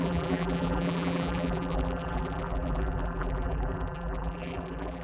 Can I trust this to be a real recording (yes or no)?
no